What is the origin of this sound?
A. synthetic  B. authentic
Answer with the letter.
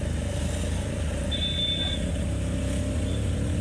B